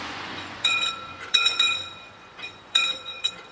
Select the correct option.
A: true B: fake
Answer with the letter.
B